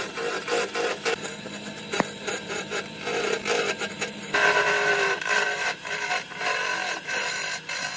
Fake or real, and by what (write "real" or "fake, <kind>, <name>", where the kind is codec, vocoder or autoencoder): fake, vocoder, BigVGAN v2